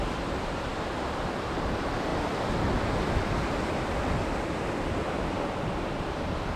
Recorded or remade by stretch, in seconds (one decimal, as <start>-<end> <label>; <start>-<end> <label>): 0.0-0.7 remade; 0.7-1.6 recorded; 1.6-6.6 remade